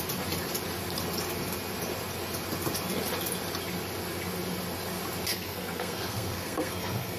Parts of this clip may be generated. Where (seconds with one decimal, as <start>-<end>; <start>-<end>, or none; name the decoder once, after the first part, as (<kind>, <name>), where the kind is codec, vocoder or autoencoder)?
5.3-7.2 (codec, SNAC)